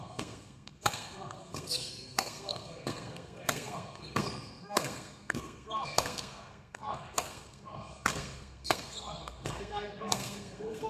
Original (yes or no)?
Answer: no